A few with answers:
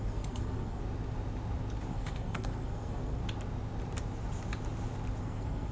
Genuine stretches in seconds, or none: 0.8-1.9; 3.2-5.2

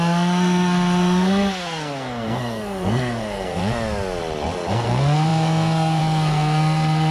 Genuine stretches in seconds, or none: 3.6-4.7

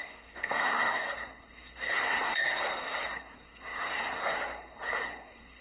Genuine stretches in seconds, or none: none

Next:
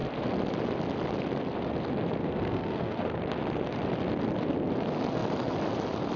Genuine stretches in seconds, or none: 0.0-2.2; 3.2-6.2

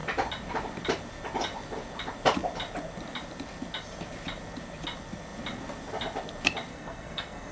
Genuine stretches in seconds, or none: 0.0-6.7